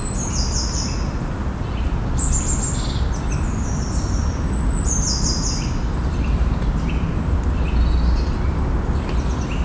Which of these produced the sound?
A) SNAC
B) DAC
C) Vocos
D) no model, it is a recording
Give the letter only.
D